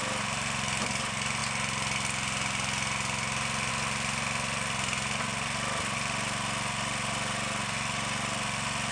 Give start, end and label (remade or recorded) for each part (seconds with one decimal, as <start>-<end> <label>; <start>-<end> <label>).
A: 0.0-8.9 recorded

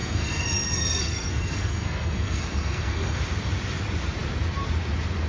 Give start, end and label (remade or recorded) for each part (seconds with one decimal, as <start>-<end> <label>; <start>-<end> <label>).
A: 0.0-3.2 remade; 3.2-5.3 recorded

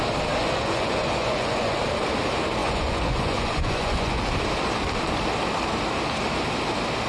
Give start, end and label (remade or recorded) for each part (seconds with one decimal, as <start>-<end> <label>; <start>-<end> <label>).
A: 0.0-0.4 recorded; 0.4-1.8 remade; 1.8-2.6 recorded; 2.6-4.2 remade; 4.2-7.1 recorded

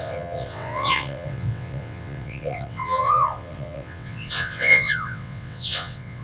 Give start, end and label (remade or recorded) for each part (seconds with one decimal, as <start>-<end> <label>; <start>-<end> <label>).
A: 0.0-6.2 remade

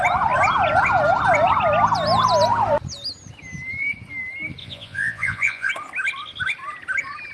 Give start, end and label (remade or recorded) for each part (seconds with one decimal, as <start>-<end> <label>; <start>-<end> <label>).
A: 0.0-4.6 recorded; 4.6-5.7 remade; 5.7-7.3 recorded

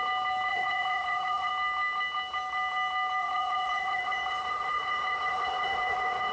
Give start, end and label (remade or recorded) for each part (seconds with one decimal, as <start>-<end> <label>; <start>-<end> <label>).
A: 0.0-0.5 recorded; 0.5-1.5 remade; 1.5-3.2 recorded; 3.2-6.3 remade